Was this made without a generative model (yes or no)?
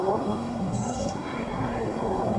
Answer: no